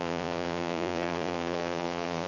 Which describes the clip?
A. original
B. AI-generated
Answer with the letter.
B